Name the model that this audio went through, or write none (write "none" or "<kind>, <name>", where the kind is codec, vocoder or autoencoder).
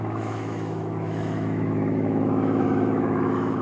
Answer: autoencoder, DAC-VAE